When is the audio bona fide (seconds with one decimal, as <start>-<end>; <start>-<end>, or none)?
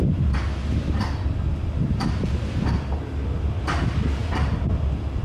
0.0-5.2